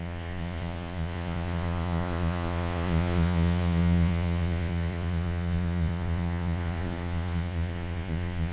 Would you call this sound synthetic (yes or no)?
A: yes